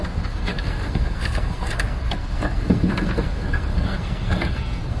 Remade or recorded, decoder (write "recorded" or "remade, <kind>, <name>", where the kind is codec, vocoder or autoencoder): remade, codec, SNAC